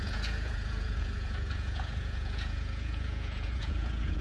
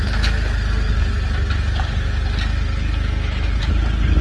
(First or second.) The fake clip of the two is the first